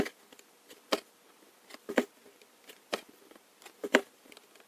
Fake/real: fake